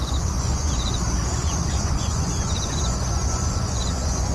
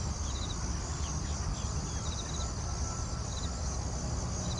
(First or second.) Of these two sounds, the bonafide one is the second